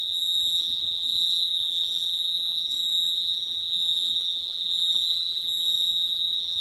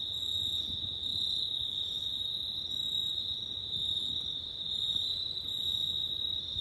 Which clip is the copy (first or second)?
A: first